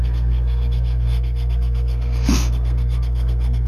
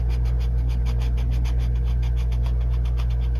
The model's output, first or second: first